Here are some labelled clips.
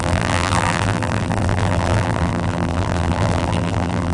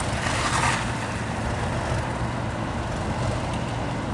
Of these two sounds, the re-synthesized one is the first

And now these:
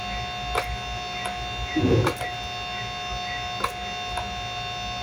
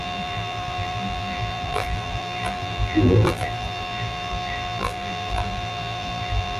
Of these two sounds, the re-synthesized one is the second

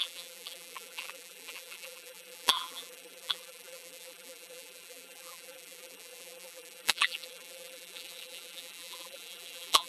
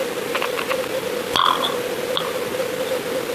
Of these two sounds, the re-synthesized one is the first